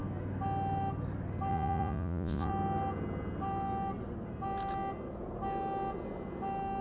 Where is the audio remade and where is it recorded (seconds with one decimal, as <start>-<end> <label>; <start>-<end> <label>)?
0.0-1.5 recorded; 1.5-2.5 remade; 2.5-6.8 recorded